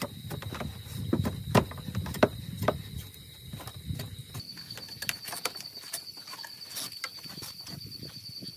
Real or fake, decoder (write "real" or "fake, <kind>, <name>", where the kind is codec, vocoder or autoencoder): real